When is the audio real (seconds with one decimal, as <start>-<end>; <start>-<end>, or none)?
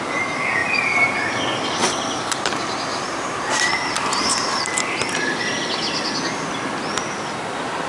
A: 0.0-0.6; 1.4-1.8; 2.5-2.9; 5.4-7.9